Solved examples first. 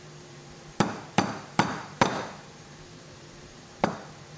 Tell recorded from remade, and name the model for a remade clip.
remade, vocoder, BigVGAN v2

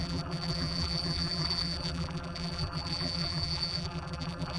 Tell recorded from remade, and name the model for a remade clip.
remade, vocoder, BigVGAN v2